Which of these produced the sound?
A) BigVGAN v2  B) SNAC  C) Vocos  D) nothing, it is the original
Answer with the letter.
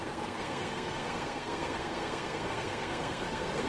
B